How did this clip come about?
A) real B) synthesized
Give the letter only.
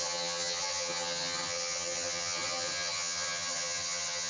B